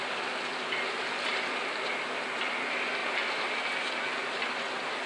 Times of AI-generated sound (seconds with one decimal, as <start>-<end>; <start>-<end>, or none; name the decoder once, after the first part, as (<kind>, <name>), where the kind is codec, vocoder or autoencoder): none